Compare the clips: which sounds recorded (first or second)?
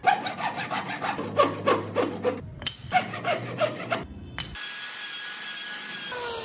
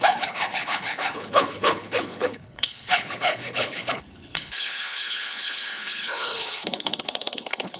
first